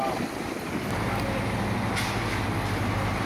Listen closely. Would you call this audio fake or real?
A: real